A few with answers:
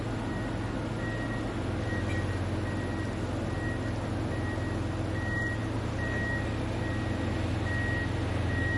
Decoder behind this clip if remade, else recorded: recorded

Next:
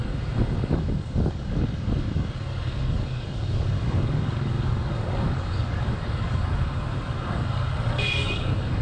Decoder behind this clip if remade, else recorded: remade, codec, DAC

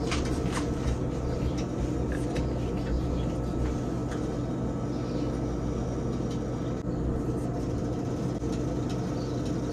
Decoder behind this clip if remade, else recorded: recorded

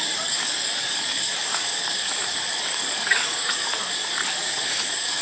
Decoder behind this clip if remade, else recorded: remade, codec, DAC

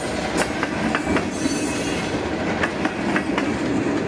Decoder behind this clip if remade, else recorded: recorded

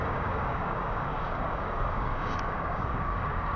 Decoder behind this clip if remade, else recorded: remade, codec, DAC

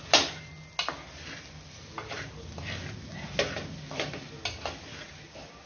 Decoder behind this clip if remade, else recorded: recorded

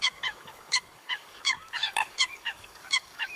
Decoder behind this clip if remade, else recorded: remade, codec, DAC